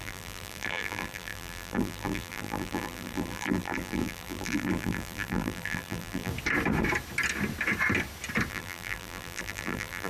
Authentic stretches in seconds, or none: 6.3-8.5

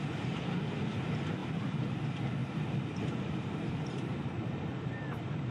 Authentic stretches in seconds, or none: 0.0-1.4; 2.0-2.4; 5.0-5.5

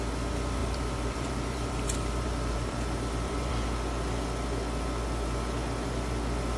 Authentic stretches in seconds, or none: 0.0-0.6; 3.5-6.6

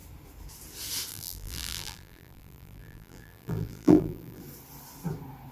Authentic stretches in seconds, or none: 0.0-1.1; 4.4-5.5